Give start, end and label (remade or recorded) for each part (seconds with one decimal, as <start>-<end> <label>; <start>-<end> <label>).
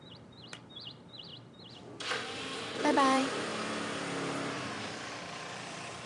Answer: 0.0-1.3 remade; 1.3-2.7 recorded; 2.7-3.5 remade; 3.5-5.1 recorded; 5.1-6.1 remade